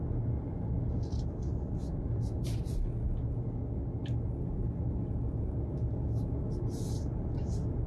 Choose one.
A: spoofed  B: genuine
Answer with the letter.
B